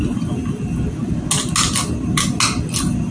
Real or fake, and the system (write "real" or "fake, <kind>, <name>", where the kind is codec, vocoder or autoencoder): real